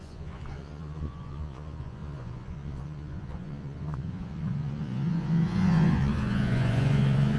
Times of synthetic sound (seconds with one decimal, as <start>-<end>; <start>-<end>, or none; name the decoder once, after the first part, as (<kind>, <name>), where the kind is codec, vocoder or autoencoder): 0.0-7.4 (vocoder, Vocos)